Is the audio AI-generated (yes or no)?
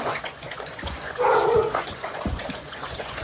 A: yes